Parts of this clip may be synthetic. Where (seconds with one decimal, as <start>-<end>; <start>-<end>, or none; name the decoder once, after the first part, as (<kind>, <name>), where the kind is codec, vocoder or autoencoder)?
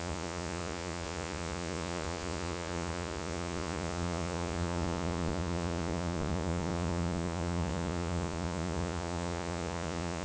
0.0-10.2 (vocoder, Vocos)